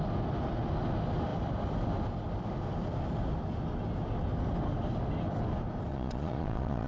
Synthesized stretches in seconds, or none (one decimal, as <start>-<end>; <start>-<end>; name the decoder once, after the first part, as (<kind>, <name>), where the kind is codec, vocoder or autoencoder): 5.9-6.9 (vocoder, Vocos)

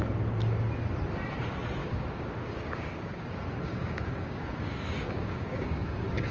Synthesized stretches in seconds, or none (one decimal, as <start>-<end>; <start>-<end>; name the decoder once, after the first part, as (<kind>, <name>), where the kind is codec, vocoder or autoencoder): 1.8-3.1 (codec, DAC); 3.7-6.3

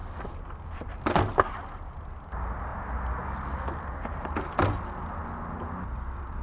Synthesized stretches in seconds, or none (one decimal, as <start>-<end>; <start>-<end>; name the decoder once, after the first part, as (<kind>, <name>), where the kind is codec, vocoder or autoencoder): 0.0-1.0 (vocoder, BigVGAN v2)